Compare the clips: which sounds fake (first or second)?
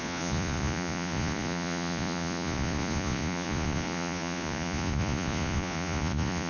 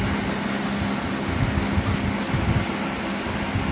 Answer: first